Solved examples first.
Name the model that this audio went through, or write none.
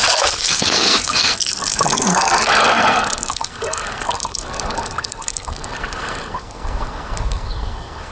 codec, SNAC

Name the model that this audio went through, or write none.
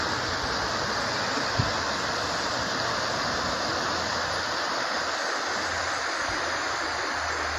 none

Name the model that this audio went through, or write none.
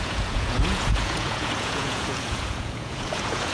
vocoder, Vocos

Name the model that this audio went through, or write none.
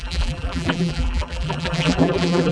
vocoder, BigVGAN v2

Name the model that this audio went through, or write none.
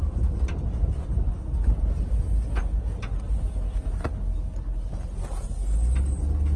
none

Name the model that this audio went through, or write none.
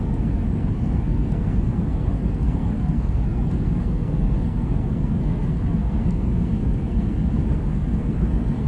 codec, SNAC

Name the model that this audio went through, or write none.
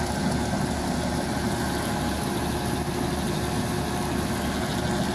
none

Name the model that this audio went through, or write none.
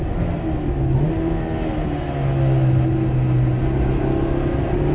none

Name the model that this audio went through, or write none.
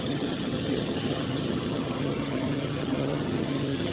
vocoder, HiFi-GAN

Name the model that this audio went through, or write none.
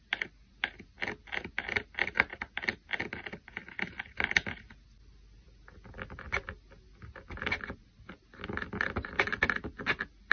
none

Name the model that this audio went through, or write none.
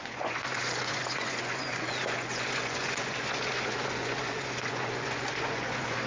vocoder, Vocos